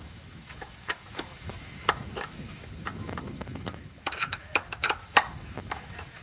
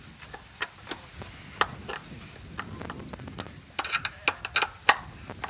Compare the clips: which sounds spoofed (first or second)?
first